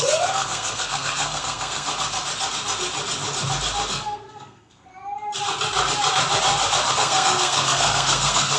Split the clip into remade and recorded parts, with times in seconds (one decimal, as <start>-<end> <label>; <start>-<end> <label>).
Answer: 0.0-1.9 remade; 1.9-3.9 recorded; 3.9-4.9 remade; 4.9-6.9 recorded; 6.9-8.6 remade